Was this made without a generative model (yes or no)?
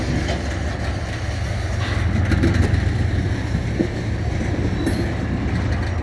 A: yes